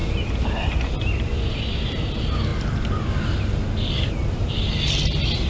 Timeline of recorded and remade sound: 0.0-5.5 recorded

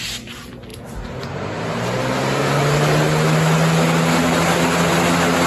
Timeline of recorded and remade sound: 0.0-5.5 recorded

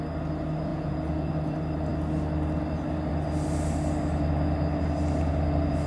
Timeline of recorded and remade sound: 0.0-0.7 recorded; 0.7-1.3 remade; 1.3-5.9 recorded

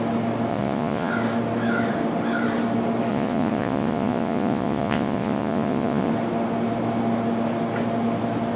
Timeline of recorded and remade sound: 0.0-0.5 recorded; 0.5-1.1 remade; 1.1-3.1 recorded; 3.1-6.1 remade; 6.1-8.6 recorded